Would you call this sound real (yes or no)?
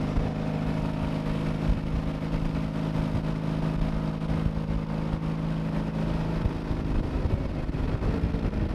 yes